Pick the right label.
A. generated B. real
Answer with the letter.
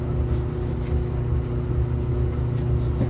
B